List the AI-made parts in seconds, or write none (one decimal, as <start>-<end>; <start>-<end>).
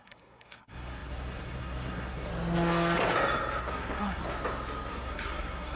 0.0-2.3; 3.6-4.2; 4.9-5.8